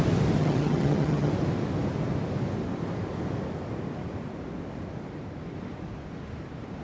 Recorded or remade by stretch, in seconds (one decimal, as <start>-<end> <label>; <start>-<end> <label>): 0.0-0.4 recorded; 0.4-1.3 remade; 1.3-6.8 recorded